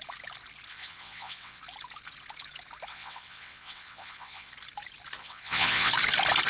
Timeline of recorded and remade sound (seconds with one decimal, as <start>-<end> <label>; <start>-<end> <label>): 0.0-0.7 recorded; 0.7-1.6 remade; 1.6-2.9 recorded; 2.9-4.5 remade; 4.5-5.2 recorded; 5.2-5.9 remade; 5.9-6.5 recorded